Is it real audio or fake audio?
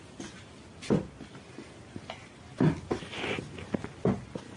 real